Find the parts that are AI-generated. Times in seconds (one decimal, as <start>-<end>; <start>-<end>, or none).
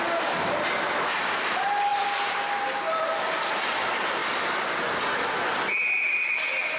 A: none